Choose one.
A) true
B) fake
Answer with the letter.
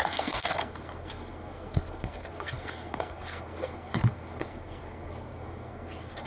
B